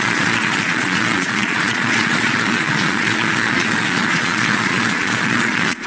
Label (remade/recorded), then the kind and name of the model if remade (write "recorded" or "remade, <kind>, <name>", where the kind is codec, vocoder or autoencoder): remade, vocoder, Vocos